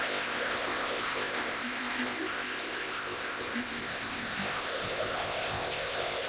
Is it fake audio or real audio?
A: fake